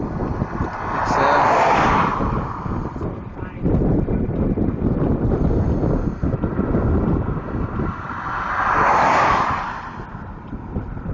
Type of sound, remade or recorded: recorded